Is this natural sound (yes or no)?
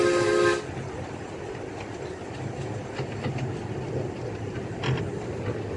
yes